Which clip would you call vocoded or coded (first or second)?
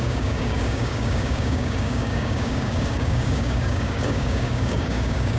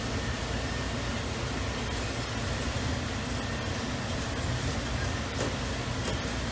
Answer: first